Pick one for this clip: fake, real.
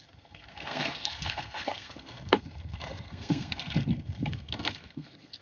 fake